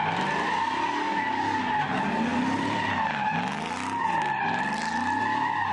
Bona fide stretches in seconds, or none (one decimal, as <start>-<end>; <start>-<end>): 0.0-1.1; 1.6-5.7